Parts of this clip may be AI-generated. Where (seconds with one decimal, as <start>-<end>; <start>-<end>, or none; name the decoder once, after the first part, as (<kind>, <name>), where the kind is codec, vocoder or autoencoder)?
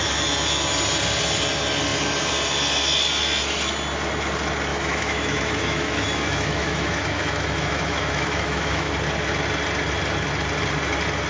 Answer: 4.7-8.9 (autoencoder, DAC-VAE)